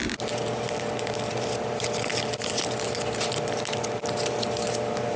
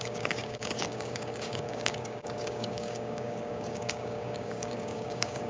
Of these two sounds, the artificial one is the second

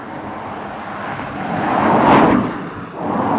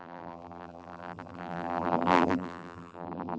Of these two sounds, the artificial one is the second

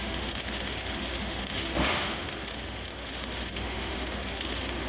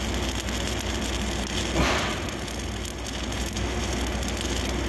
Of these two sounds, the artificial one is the first